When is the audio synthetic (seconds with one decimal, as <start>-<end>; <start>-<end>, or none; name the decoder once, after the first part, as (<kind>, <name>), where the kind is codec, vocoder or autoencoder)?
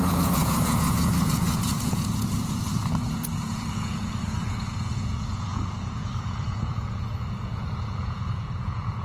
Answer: 0.0-9.0 (vocoder, Vocos)